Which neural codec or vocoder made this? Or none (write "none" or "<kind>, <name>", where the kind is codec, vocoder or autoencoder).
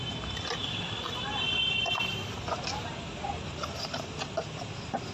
none